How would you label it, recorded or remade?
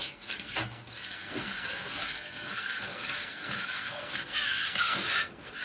remade